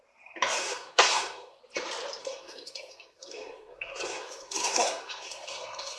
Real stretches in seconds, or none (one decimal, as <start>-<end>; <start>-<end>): 0.0-0.6; 1.6-2.2